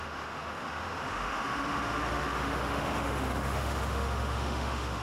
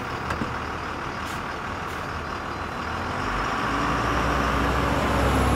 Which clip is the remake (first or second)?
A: first